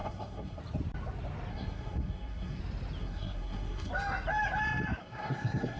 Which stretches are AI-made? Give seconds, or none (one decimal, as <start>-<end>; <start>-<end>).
0.0-0.6; 1.5-2.6; 3.0-3.9; 5.0-5.8